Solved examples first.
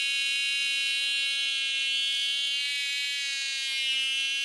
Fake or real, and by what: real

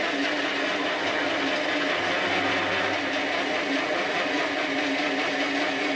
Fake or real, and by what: real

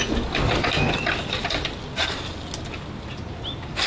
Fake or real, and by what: real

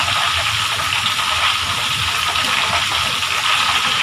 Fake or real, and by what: real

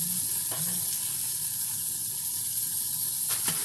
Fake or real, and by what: real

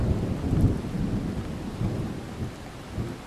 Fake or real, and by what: real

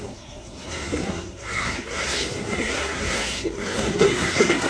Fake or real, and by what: fake, codec, SNAC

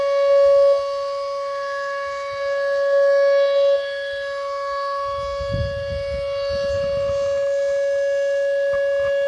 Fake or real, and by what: real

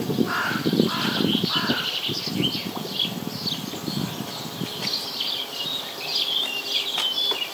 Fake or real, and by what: fake, vocoder, BigVGAN v2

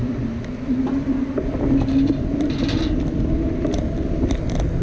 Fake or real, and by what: real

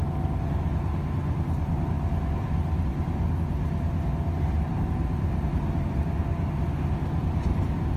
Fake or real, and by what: real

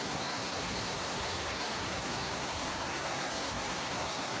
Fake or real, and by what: fake, codec, SNAC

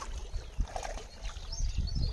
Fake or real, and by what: real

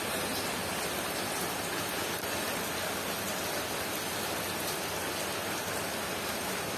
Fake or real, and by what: real